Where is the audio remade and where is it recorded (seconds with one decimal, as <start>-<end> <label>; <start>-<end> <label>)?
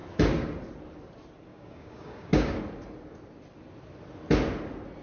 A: 0.0-1.5 recorded; 1.5-2.6 remade; 2.6-5.0 recorded